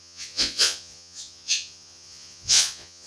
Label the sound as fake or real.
fake